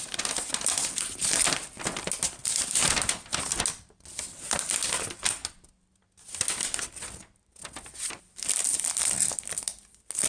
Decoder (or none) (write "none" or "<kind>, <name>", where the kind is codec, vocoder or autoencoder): none